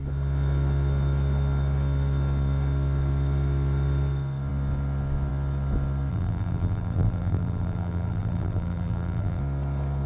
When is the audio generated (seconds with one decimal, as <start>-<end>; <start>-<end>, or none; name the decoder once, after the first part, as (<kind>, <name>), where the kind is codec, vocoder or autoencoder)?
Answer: 6.1-9.4 (vocoder, BigVGAN v2)

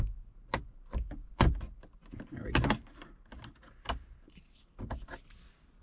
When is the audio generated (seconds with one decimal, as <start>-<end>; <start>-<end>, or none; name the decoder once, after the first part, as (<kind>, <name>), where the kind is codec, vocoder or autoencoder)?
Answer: none

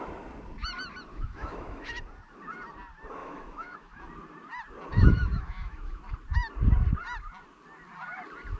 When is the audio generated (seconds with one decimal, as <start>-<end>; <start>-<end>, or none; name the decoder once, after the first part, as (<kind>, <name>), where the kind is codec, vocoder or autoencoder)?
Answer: 1.1-2.0 (autoencoder, DAC-VAE); 3.2-4.0; 4.9-6.0